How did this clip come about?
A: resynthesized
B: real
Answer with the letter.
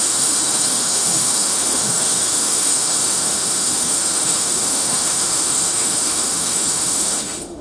A